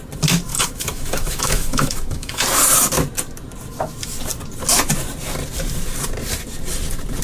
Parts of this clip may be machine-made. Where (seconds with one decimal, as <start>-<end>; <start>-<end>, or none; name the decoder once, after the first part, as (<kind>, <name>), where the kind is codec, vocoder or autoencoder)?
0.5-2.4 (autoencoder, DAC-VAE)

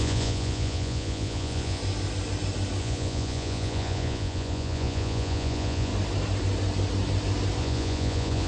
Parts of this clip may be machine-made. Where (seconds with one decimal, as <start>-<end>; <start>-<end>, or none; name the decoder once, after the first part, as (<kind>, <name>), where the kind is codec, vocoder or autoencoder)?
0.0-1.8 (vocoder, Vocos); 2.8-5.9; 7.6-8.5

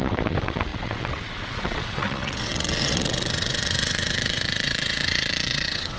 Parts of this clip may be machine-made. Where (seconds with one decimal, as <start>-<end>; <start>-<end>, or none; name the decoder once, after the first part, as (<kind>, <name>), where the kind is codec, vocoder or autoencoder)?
0.0-6.0 (vocoder, WaveNeXt)

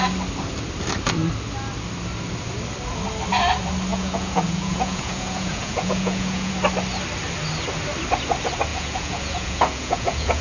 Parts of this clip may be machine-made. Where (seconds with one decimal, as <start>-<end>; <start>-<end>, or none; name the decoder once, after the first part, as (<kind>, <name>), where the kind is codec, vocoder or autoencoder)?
3.9-6.5 (vocoder, Vocos); 8.7-10.4

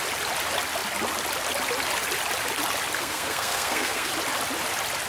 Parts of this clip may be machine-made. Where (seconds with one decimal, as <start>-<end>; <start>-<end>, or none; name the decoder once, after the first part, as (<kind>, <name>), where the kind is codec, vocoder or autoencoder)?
3.0-4.1 (codec, SNAC)

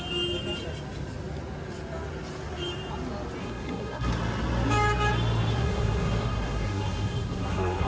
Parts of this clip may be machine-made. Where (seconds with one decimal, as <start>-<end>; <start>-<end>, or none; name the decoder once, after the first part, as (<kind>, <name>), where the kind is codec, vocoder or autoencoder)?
3.4-4.1 (codec, SNAC); 5.5-7.9